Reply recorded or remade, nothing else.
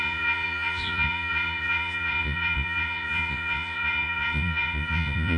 remade